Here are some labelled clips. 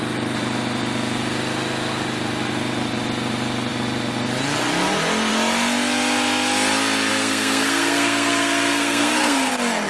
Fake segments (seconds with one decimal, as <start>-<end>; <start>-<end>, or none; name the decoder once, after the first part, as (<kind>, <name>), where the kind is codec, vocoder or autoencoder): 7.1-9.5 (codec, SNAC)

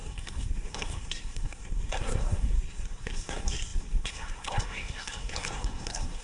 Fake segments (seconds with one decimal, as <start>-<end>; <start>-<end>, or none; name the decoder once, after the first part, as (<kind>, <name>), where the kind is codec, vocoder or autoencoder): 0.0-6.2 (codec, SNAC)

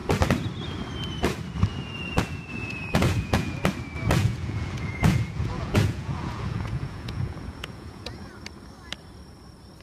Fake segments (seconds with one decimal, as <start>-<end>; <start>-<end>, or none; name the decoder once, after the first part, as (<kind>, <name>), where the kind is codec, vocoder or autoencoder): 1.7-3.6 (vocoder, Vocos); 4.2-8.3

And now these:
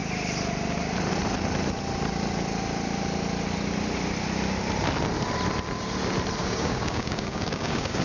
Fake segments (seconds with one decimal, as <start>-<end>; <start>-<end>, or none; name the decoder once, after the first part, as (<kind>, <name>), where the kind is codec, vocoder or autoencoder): 6.4-8.0 (codec, DAC)

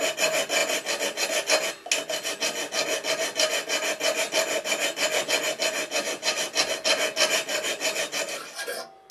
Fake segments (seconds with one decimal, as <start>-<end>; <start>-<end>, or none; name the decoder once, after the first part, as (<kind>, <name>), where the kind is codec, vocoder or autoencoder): none

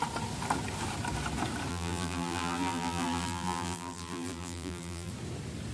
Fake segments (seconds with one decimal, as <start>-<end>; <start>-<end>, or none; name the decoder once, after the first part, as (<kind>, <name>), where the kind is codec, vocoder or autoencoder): 1.7-5.1 (vocoder, BigVGAN v2)

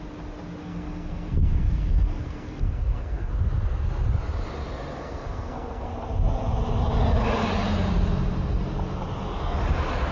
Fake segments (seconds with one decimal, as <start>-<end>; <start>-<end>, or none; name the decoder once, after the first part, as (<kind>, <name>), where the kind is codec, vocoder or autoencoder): 0.6-3.3 (codec, SNAC); 5.0-5.9

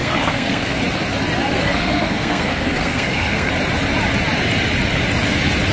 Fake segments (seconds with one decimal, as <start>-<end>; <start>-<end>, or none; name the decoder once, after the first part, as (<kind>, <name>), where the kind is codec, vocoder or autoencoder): 0.0-0.8 (codec, SNAC); 1.4-3.5